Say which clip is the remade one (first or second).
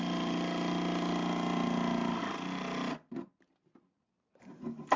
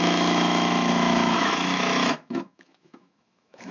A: second